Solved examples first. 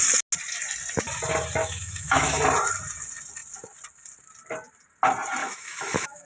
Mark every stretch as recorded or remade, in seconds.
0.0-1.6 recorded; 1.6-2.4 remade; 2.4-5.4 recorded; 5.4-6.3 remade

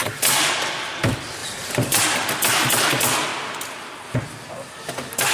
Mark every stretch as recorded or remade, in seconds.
0.0-0.5 remade; 0.5-1.4 recorded; 1.4-2.0 remade; 2.0-5.3 recorded

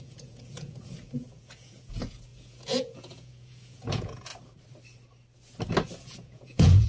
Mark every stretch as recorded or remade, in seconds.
0.0-4.3 remade; 4.3-6.0 recorded; 6.0-6.9 remade

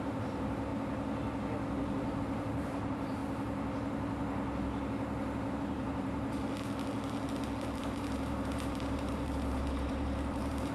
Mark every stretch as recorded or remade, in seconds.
0.0-0.7 remade; 0.7-2.2 recorded; 2.2-3.2 remade; 3.2-5.5 recorded; 5.5-6.4 remade; 6.4-7.8 recorded; 7.8-10.7 remade

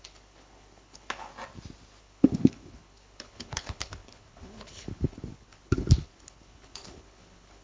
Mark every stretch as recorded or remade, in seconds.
0.0-1.3 remade; 1.3-2.0 recorded; 2.0-7.6 remade